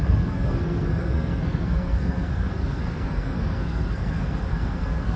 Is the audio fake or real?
fake